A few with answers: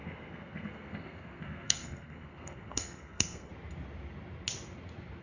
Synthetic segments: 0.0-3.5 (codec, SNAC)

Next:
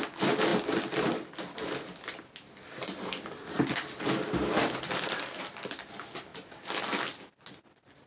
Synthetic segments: none

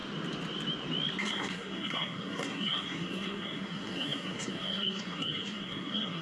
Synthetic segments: 1.2-6.2 (codec, SNAC)

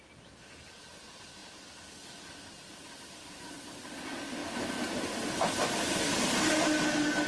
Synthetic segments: 4.4-5.6 (vocoder, BigVGAN v2); 6.1-6.8

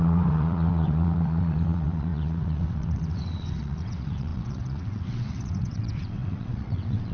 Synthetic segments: 0.0-7.1 (vocoder, WaveNeXt)

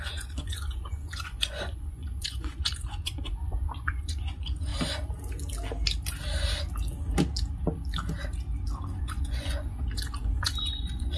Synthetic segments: 0.0-4.7 (vocoder, Vocos); 9.0-11.2

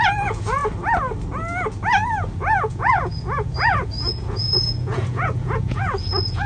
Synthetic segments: 0.0-0.6 (vocoder, Vocos); 2.7-6.5

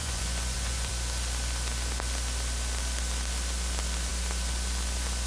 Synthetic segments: 0.0-0.9 (vocoder, Vocos)